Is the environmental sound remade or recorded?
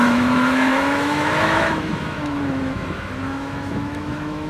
remade